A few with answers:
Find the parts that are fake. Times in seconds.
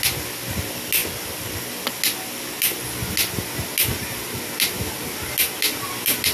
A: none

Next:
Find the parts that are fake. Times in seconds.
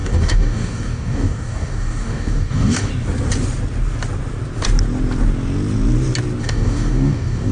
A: 0.0-2.9 (codec, DAC); 6.4-7.5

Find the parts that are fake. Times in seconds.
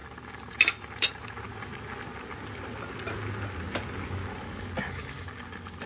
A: none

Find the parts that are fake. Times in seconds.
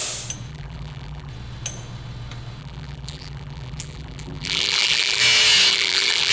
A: 0.5-1.3 (vocoder, BigVGAN v2); 2.6-5.2; 5.7-6.3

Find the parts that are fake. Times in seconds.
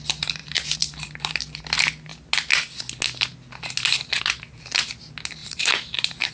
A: 0.4-1.6 (vocoder, BigVGAN v2); 5.4-6.3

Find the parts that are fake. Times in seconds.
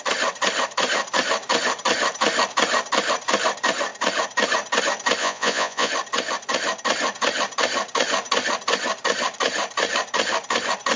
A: 5.2-5.9 (vocoder, Vocos)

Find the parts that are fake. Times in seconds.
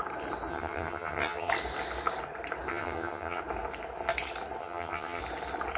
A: 0.5-1.5 (vocoder, HiFi-GAN); 2.7-3.4; 4.6-5.2